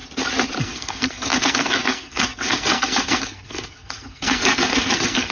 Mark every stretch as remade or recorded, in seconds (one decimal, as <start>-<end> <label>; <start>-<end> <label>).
0.0-0.6 recorded; 0.6-5.3 remade